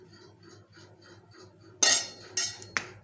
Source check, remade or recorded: recorded